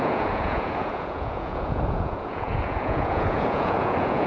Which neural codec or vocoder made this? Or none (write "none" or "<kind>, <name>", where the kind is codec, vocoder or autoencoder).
vocoder, Vocos